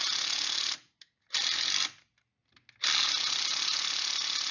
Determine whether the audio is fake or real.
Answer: real